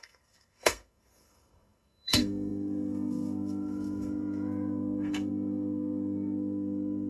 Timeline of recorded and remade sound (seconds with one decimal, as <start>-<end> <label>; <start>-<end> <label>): 0.0-7.1 remade